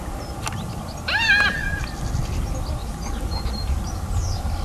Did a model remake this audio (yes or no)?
no